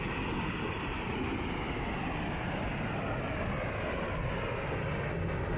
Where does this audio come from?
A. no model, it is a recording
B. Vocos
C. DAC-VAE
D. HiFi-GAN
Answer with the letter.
A